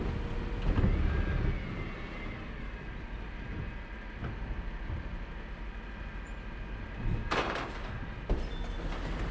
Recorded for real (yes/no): yes